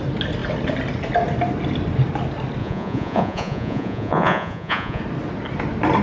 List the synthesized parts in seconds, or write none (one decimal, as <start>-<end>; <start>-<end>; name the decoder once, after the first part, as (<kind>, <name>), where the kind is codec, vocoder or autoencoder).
2.6-5.0 (vocoder, Vocos)

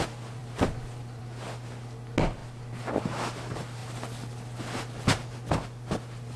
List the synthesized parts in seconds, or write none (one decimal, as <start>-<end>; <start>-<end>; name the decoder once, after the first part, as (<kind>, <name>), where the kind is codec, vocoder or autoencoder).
0.4-1.2 (vocoder, BigVGAN v2)

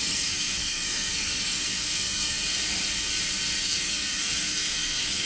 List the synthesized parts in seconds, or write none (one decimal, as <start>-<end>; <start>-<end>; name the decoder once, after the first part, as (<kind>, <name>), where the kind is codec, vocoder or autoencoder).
0.0-2.5 (codec, SNAC); 3.6-5.3

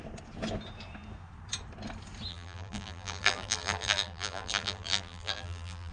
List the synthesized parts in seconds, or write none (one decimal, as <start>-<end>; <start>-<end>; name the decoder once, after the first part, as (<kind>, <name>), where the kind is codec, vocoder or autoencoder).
2.3-5.9 (vocoder, BigVGAN v2)